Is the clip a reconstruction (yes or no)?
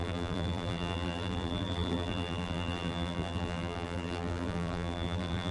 yes